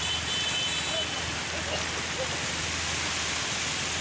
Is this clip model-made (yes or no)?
no